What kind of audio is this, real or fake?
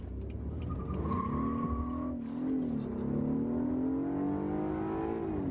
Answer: real